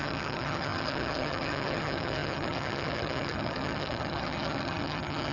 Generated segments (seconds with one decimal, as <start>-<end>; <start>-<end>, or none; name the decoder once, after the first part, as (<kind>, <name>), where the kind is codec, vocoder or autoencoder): 0.0-5.3 (vocoder, HiFi-GAN)